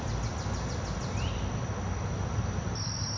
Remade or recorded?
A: recorded